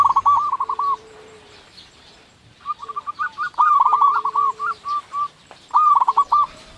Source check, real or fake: fake